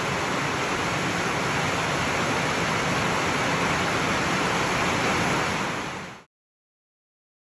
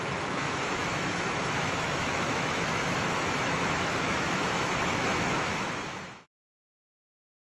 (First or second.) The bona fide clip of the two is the first